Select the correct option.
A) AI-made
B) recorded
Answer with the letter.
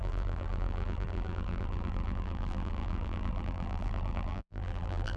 A